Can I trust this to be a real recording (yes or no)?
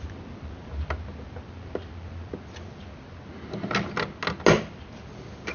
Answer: yes